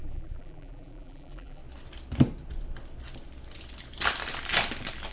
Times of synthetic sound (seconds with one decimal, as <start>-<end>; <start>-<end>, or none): 0.0-1.6